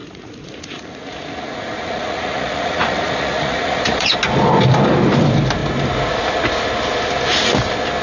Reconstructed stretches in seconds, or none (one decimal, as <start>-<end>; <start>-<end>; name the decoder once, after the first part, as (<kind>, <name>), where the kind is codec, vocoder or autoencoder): 0.0-4.1 (vocoder, Vocos)